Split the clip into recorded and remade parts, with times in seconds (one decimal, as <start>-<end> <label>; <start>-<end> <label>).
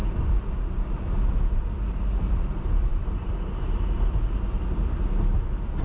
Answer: 0.0-5.8 remade